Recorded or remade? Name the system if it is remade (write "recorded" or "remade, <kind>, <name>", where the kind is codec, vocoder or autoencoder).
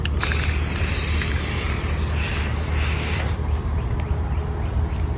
recorded